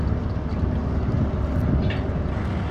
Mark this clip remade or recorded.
recorded